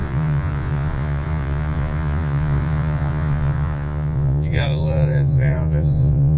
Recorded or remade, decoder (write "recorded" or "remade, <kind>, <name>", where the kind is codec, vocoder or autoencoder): remade, vocoder, Vocos